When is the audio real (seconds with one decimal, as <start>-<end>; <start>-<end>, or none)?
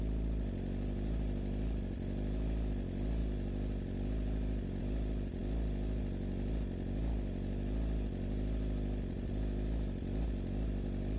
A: 0.0-11.2